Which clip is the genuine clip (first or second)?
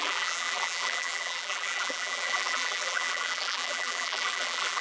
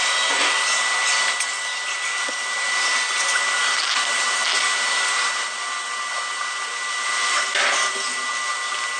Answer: second